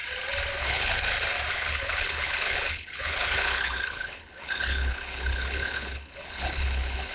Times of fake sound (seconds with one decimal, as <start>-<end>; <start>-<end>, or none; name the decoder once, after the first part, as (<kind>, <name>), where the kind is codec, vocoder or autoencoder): 0.6-1.0 (codec, HILCodec); 1.5-7.1